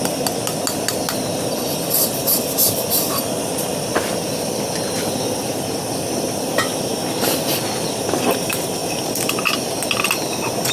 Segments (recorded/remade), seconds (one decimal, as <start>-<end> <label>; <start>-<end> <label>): 0.0-10.7 recorded